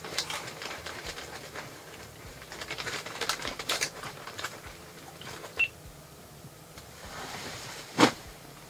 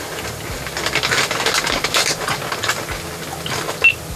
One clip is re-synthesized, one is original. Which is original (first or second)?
second